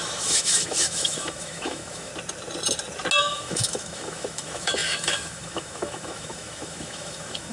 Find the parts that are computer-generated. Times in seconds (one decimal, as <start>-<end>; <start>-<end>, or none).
0.0-2.1; 3.2-7.5